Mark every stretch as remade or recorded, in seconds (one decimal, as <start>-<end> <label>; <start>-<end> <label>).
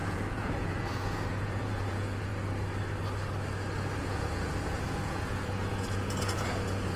0.0-2.3 remade; 2.3-4.0 recorded; 4.0-7.0 remade